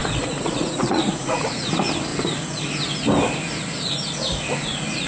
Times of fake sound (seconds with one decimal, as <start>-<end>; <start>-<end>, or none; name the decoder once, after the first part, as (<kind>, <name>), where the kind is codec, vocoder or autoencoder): 0.0-1.7 (vocoder, Vocos)